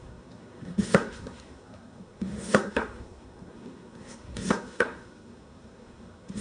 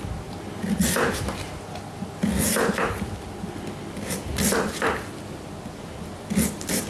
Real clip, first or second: second